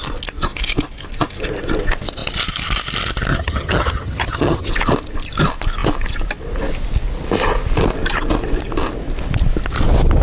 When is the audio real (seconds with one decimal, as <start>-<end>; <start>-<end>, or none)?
0.0-3.3; 4.7-10.2